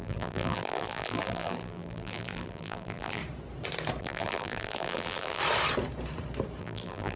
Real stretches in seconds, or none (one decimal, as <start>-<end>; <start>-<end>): 3.2-4.0; 5.4-6.6

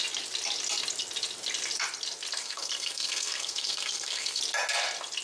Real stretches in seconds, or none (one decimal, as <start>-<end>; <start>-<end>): 0.0-2.4; 4.4-5.2

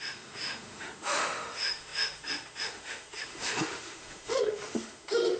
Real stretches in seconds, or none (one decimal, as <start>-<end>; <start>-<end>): none

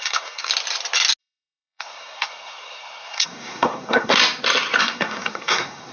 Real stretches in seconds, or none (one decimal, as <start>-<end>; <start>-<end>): 0.5-1.2; 4.2-4.8